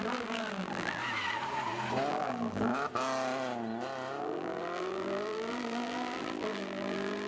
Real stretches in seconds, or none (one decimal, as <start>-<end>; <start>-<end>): 1.0-2.1; 2.7-4.2